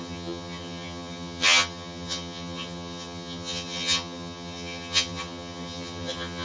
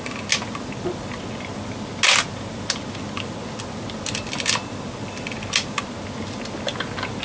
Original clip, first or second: second